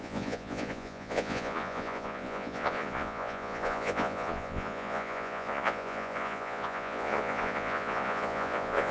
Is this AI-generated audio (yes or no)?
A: yes